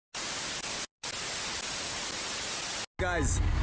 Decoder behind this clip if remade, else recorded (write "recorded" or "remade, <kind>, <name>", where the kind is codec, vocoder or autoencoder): recorded